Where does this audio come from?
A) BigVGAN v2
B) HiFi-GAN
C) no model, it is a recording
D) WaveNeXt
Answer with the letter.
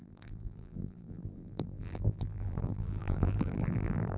A